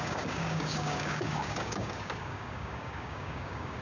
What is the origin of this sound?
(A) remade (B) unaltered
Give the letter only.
A